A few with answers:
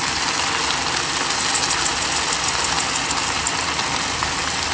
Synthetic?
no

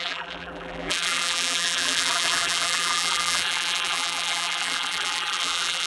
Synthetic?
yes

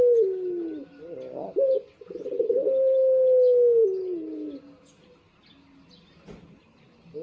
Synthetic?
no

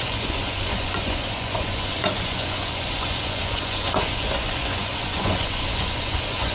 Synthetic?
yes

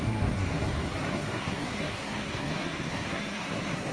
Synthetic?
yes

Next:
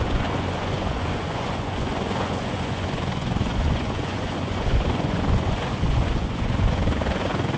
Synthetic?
yes